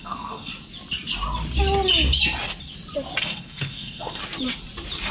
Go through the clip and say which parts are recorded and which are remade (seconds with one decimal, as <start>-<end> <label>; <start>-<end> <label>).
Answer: 0.0-0.5 remade; 0.5-3.2 recorded; 3.2-4.2 remade; 4.2-5.1 recorded